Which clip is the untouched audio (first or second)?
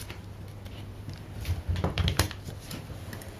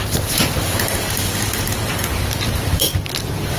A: first